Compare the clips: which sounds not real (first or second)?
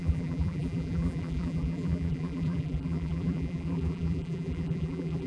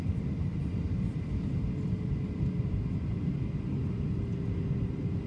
first